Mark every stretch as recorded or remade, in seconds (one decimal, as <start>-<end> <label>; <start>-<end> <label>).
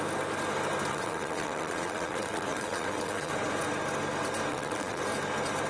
0.0-0.9 recorded; 0.9-3.3 remade; 3.3-4.5 recorded; 4.5-5.0 remade; 5.0-5.7 recorded